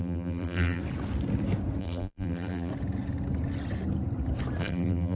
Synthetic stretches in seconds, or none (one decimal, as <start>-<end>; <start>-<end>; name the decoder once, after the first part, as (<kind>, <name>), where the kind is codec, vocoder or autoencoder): 0.0-0.8 (vocoder, BigVGAN v2); 1.8-2.7; 4.6-5.2